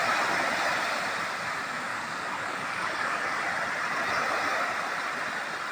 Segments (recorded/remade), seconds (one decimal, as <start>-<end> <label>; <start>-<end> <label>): 0.0-1.9 recorded; 1.9-3.4 remade; 3.4-5.7 recorded